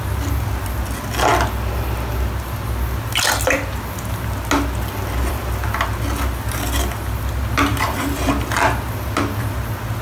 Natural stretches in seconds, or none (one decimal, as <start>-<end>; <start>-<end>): 0.0-7.7; 8.3-10.0